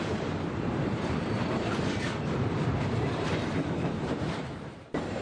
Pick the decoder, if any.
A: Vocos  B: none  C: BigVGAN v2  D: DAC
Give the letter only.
C